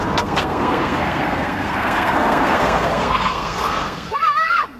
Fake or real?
fake